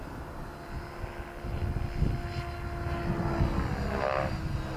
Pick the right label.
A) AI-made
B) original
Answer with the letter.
B